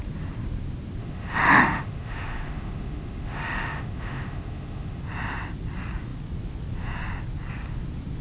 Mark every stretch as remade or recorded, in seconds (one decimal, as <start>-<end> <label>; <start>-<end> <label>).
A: 0.0-1.0 recorded; 1.0-5.0 remade; 5.0-8.2 recorded